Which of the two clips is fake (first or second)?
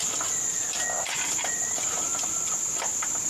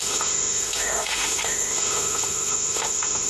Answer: second